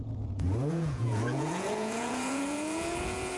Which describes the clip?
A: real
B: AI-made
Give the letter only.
B